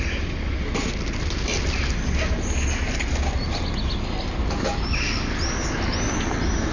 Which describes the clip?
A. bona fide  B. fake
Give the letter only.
A